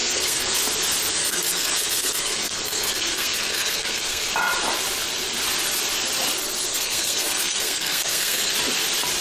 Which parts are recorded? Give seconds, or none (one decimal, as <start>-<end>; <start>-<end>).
0.6-1.2; 4.3-6.7; 8.5-9.2